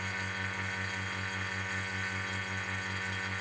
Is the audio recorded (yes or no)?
yes